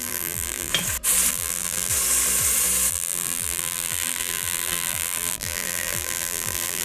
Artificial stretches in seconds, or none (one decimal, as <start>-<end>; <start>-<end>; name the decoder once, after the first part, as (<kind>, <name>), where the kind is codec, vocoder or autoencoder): 0.0-0.7 (vocoder, BigVGAN v2); 1.3-1.9; 2.9-6.8

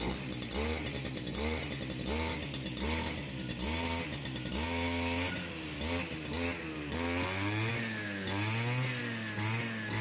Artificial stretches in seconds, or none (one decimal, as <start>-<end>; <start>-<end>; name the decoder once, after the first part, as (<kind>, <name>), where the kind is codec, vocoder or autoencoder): 0.5-1.3 (vocoder, BigVGAN v2)

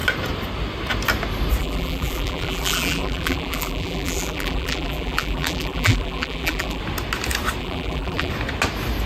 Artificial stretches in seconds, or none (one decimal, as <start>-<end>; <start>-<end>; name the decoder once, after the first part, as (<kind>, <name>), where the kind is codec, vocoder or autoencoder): 1.6-6.8 (vocoder, BigVGAN v2); 7.6-8.3

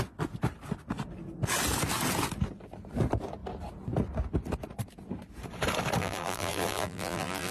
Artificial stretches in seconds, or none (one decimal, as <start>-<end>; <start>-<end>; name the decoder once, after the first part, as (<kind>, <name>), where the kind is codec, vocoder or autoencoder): 6.0-7.5 (vocoder, BigVGAN v2)

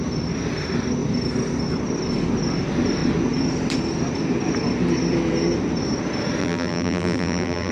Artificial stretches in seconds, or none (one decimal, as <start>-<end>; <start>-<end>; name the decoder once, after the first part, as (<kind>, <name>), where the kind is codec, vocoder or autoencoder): 6.4-7.7 (vocoder, BigVGAN v2)

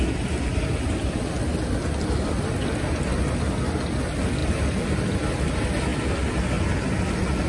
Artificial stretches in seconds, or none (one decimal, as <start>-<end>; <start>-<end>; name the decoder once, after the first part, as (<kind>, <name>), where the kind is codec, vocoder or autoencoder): 4.4-5.0 (vocoder, BigVGAN v2)

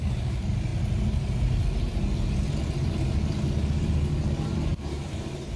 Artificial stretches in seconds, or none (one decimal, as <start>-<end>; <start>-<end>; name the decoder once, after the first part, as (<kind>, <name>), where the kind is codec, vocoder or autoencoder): 4.7-5.6 (vocoder, BigVGAN v2)